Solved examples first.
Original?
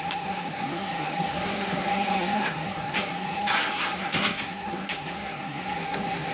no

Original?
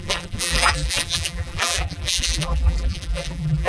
no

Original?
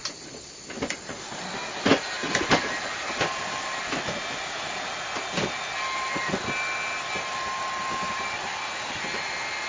yes